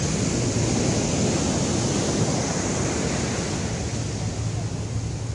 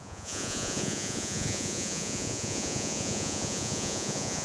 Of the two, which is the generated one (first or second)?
second